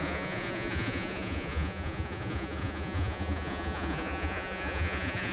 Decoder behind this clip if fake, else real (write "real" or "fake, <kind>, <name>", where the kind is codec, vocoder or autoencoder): fake, vocoder, Vocos